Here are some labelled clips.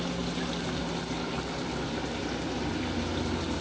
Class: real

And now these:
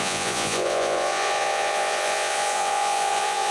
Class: fake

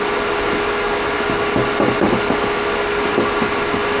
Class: real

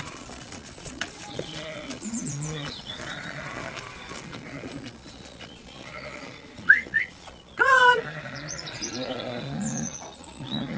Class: fake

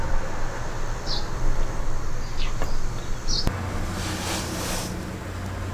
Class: real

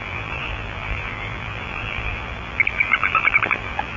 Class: fake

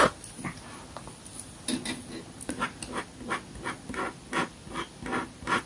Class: real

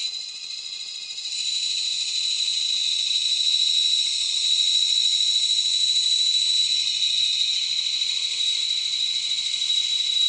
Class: real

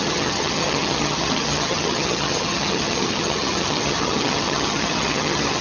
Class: fake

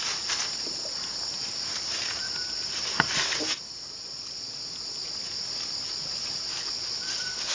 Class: real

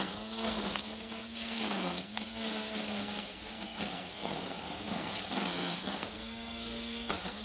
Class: fake